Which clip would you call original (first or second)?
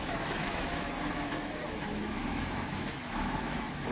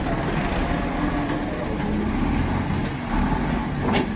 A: second